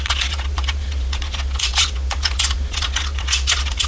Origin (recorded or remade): remade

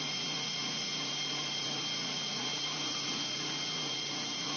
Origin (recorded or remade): remade